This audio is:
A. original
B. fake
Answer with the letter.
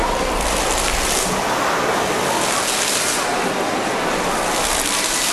A